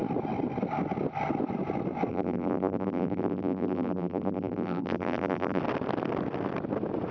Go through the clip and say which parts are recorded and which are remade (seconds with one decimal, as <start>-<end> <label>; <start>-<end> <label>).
0.0-2.1 recorded; 2.1-5.6 remade; 5.6-7.1 recorded

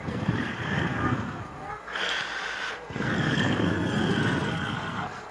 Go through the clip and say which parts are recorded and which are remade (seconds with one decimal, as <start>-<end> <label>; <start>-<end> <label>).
0.0-2.1 remade; 2.1-2.7 recorded; 2.7-5.3 remade

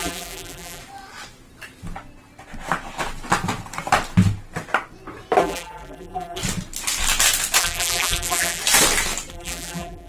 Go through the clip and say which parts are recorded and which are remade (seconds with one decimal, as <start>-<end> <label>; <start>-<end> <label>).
0.0-0.8 remade; 0.8-5.4 recorded; 5.4-6.4 remade; 6.4-7.6 recorded; 7.6-8.6 remade; 8.6-9.3 recorded; 9.3-10.1 remade